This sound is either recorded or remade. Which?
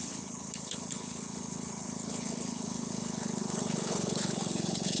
remade